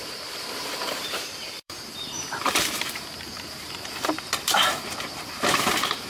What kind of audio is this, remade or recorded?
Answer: remade